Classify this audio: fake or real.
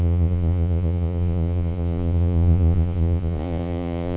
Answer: fake